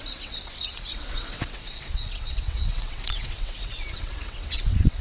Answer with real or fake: fake